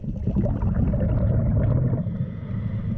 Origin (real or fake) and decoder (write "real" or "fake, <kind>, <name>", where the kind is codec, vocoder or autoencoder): real